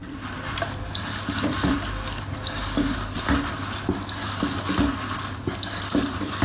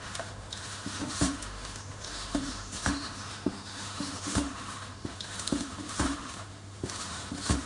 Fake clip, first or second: second